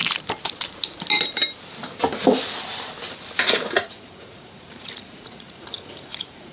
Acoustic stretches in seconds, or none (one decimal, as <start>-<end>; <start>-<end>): 0.0-3.9